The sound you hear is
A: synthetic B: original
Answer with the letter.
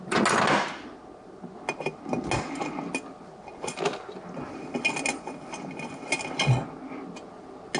B